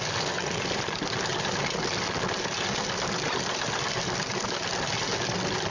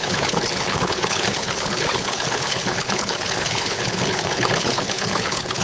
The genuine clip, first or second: first